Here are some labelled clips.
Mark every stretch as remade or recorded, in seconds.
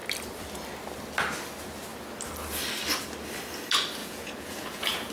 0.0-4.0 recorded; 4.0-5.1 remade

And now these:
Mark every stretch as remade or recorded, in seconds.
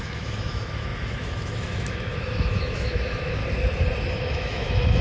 0.0-3.4 remade; 3.4-4.2 recorded; 4.2-5.0 remade